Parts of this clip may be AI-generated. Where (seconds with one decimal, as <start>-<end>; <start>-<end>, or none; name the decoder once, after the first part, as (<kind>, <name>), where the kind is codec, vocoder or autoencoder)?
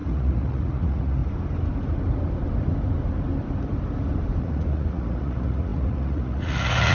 0.0-1.2 (vocoder, Vocos); 4.4-6.9